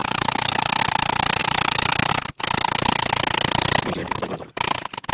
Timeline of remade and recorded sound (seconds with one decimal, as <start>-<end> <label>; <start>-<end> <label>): 0.0-0.8 remade; 0.8-1.4 recorded; 1.4-2.1 remade; 2.1-4.0 recorded; 4.0-4.5 remade; 4.5-5.1 recorded